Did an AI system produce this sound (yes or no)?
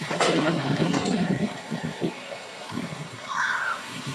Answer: yes